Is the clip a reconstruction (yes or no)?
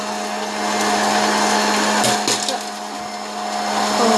no